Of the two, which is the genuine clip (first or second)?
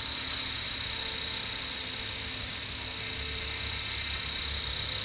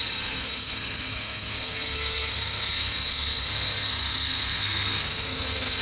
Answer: first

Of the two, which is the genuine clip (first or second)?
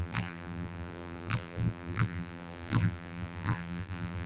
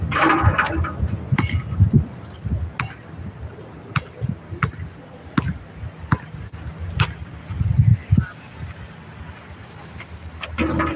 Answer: second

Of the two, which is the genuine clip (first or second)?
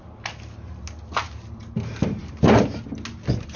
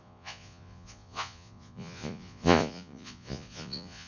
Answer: first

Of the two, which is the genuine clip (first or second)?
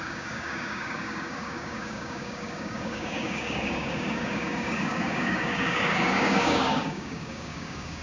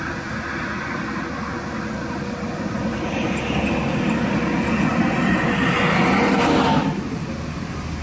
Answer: second